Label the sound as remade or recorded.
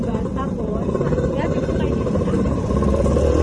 remade